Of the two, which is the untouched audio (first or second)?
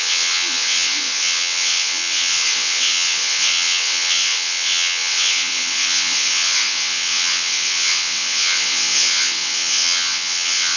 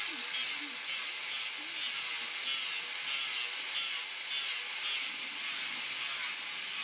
second